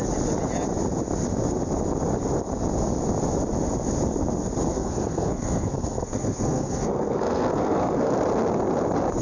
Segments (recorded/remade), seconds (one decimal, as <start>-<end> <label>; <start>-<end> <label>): 0.0-4.7 recorded; 4.7-8.1 remade; 8.1-9.2 recorded